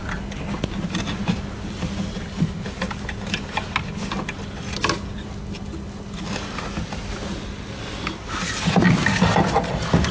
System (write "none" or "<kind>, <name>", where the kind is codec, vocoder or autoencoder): none